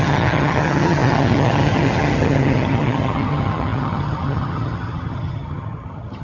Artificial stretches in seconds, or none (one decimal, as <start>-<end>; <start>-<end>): 0.0-6.2

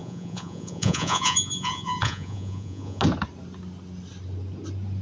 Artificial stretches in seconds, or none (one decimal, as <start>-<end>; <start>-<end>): 0.0-3.0

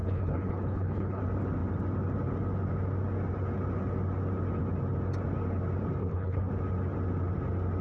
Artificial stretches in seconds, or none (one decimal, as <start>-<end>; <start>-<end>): 0.0-1.2; 6.0-6.5

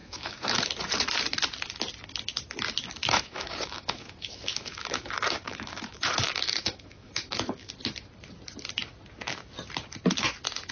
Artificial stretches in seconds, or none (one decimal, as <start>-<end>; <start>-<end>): 0.0-0.6; 3.0-7.7